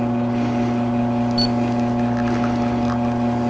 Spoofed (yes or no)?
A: no